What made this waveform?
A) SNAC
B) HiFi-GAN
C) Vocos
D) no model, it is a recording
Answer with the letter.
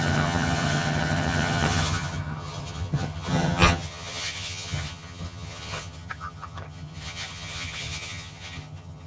B